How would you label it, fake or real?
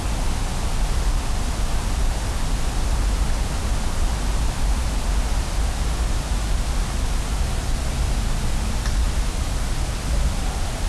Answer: real